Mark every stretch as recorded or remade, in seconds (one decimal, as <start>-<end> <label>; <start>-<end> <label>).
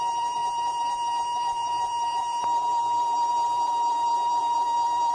0.0-5.1 remade